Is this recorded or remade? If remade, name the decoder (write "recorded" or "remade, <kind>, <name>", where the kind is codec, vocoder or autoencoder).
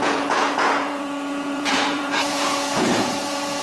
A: remade, vocoder, Vocos